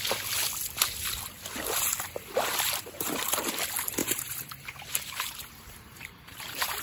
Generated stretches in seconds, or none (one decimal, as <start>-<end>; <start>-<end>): 2.5-3.4; 4.0-6.8